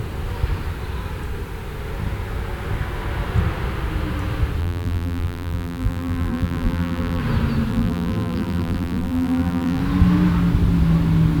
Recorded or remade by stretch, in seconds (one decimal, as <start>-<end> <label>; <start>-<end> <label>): 0.0-4.6 recorded; 4.6-7.2 remade; 7.2-7.7 recorded; 7.7-9.8 remade; 9.8-11.4 recorded